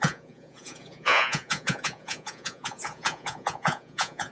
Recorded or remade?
remade